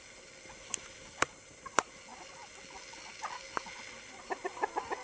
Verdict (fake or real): real